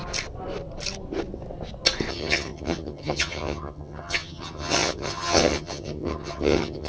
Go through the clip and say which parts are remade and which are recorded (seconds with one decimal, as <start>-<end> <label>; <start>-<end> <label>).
0.0-2.1 recorded; 2.1-6.9 remade